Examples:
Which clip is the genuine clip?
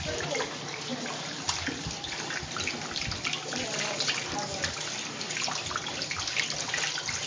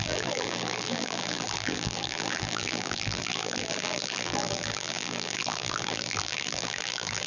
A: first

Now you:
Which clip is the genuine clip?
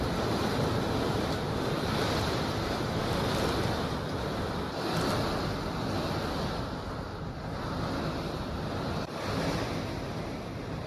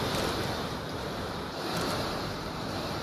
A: first